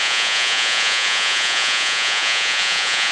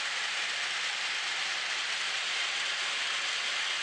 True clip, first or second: second